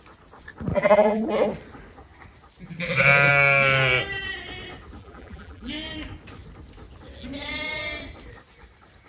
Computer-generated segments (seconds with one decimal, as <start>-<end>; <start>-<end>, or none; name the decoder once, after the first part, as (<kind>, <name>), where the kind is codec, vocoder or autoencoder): 0.7-1.3 (vocoder, BigVGAN v2); 5.0-5.7